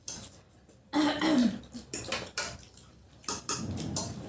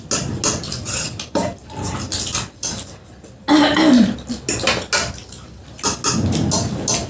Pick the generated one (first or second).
first